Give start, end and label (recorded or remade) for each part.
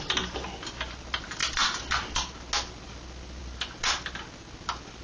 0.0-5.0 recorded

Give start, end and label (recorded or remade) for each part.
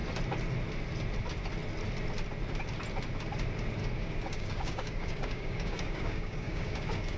0.0-3.8 recorded; 3.8-7.2 remade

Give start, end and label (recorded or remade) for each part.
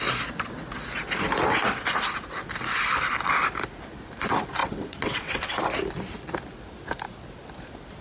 0.0-4.6 recorded; 4.6-5.6 remade; 5.6-8.0 recorded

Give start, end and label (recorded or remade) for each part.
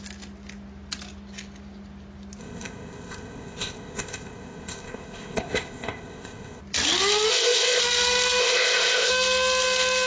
0.0-2.4 recorded; 2.4-6.6 remade; 6.6-7.3 recorded; 7.3-7.8 remade; 7.8-8.4 recorded; 8.4-9.1 remade; 9.1-10.1 recorded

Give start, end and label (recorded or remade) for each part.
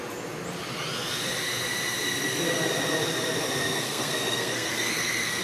0.0-3.6 recorded; 3.6-5.4 remade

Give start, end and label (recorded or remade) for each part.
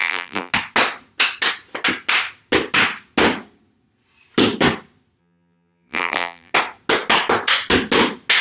0.0-0.5 remade; 0.5-5.2 recorded; 5.2-6.5 remade; 6.5-8.4 recorded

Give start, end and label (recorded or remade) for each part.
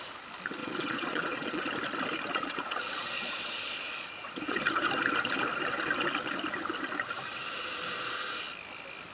0.0-0.6 recorded; 0.6-1.7 remade; 1.7-2.3 recorded; 2.3-4.6 remade; 4.6-9.1 recorded